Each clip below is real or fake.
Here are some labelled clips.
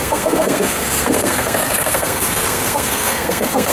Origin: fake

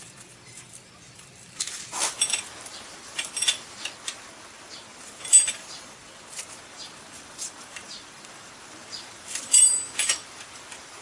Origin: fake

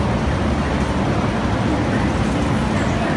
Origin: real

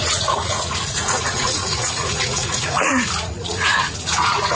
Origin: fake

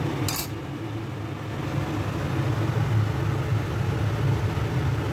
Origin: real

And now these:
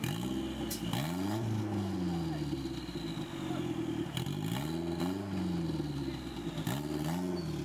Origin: real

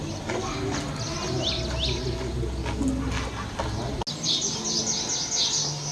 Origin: real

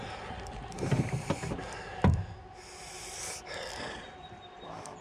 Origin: real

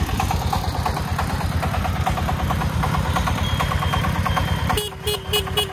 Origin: real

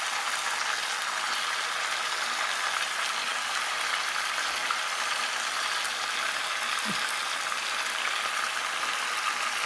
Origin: real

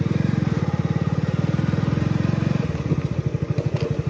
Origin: real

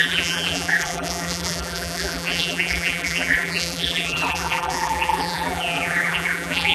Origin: fake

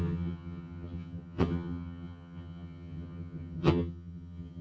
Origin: fake